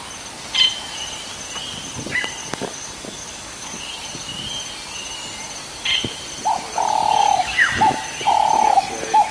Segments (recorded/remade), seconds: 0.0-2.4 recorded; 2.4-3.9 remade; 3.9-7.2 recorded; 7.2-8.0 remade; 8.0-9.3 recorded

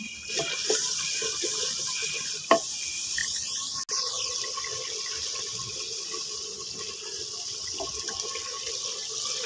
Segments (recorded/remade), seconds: 0.0-9.5 recorded